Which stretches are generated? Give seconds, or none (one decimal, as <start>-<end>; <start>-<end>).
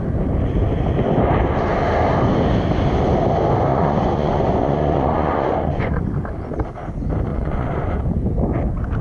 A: 3.7-6.0; 7.3-8.0